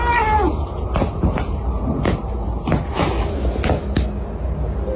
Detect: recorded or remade recorded